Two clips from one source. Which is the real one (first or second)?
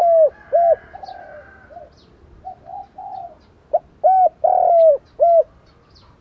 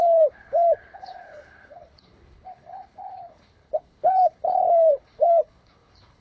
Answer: first